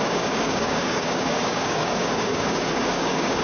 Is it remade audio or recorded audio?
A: remade